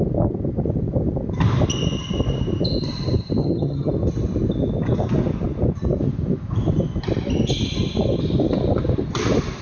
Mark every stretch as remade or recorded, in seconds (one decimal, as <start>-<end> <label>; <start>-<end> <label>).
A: 0.0-3.4 recorded; 3.4-3.9 remade; 3.9-9.6 recorded